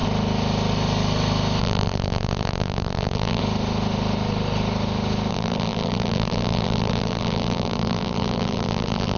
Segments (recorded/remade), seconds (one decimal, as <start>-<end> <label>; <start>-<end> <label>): 0.0-1.6 recorded; 1.6-3.4 remade; 3.4-5.3 recorded; 5.3-9.2 remade